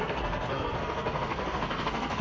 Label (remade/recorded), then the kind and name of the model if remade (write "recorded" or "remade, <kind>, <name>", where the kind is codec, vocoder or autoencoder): remade, codec, SNAC